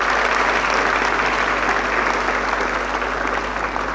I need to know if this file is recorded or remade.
recorded